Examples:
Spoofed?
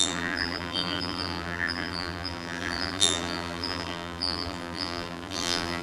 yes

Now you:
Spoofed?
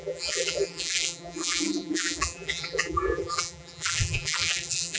yes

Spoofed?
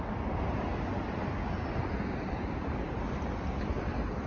no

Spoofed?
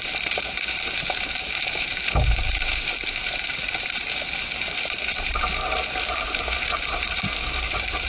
yes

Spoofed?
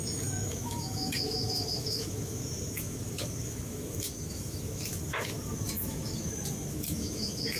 yes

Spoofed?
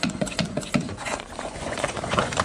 yes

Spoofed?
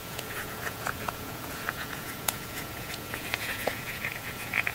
yes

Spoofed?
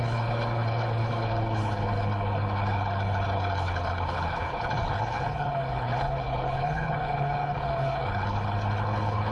yes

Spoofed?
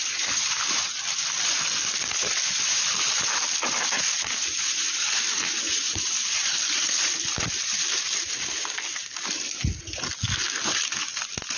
no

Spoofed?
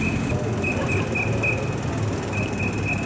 no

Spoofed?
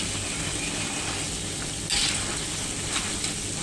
no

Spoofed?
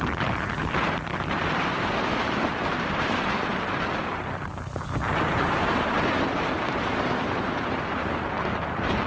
yes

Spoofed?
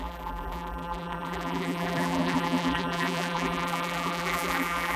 yes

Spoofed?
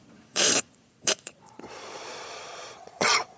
yes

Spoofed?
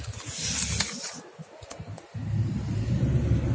no